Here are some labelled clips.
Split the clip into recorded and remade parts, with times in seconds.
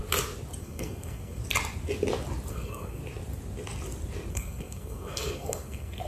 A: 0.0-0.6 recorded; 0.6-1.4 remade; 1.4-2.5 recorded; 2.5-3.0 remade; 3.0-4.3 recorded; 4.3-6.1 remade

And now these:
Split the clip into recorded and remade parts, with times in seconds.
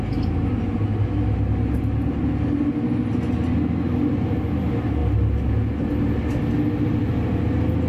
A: 0.0-7.9 recorded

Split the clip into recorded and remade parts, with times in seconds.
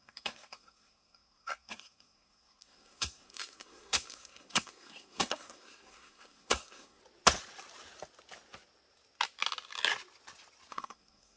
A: 0.0-7.0 remade; 7.0-10.7 recorded; 10.7-11.4 remade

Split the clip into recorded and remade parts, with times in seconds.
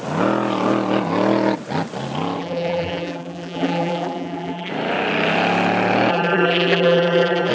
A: 0.0-2.4 recorded; 2.4-4.7 remade; 4.7-6.1 recorded; 6.1-7.5 remade